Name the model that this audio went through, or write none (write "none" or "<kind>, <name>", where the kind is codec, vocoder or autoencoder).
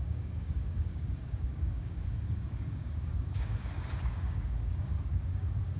codec, DAC